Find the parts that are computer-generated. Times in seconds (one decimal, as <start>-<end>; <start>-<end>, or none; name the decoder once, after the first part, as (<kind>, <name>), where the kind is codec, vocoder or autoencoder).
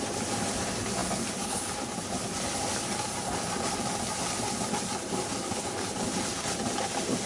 none